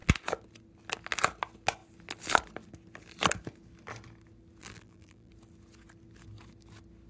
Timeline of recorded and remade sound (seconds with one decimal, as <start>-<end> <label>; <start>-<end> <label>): 0.0-4.6 recorded; 4.6-5.3 remade; 5.3-7.1 recorded